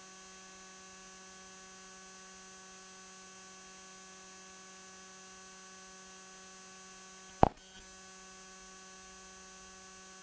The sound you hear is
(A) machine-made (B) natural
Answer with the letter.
B